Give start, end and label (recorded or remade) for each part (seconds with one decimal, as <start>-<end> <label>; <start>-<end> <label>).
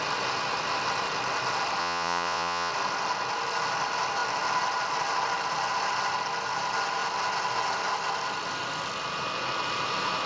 0.0-1.8 recorded; 1.8-2.7 remade; 2.7-10.3 recorded